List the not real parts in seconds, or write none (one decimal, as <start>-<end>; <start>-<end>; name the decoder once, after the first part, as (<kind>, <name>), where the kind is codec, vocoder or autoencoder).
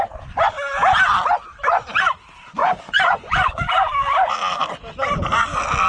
2.6-3.7 (vocoder, Vocos)